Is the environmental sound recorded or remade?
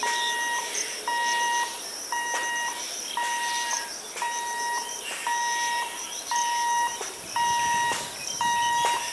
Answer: remade